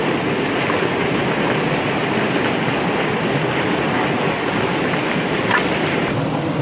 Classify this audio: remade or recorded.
recorded